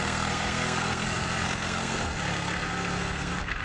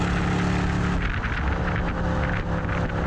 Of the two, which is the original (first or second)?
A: second